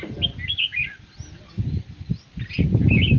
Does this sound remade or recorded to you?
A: recorded